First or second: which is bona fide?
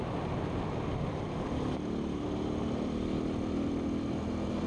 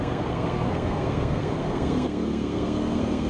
first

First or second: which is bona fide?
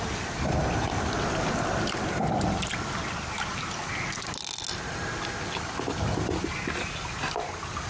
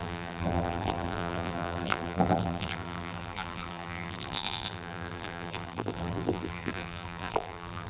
first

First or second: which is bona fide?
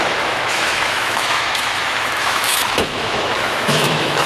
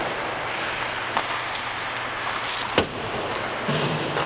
second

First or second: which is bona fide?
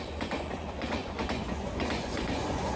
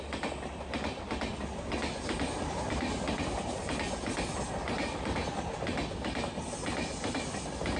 second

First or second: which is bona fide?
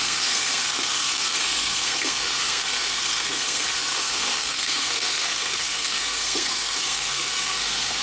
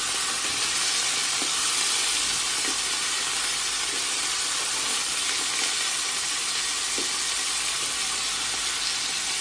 second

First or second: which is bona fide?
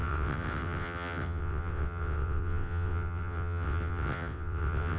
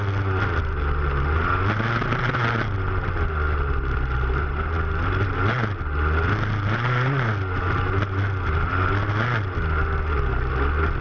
second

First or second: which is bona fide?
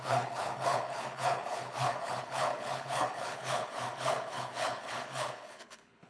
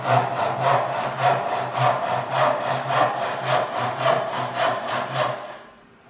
second